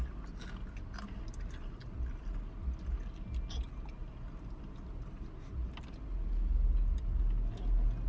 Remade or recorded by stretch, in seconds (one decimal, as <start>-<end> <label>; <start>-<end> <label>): 0.0-8.1 recorded